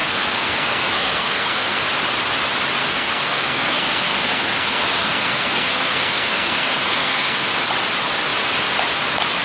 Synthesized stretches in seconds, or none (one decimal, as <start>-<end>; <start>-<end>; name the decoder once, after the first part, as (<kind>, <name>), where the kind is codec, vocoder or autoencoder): 0.0-1.8 (codec, SNAC); 2.8-7.5